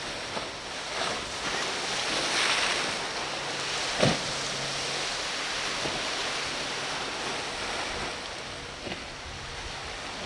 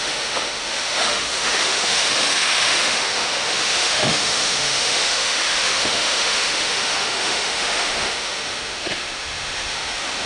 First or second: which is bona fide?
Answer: first